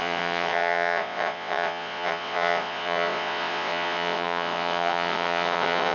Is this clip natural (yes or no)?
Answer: no